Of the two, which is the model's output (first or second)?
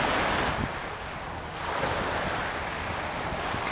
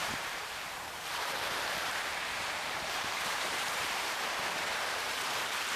second